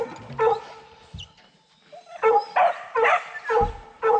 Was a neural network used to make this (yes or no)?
no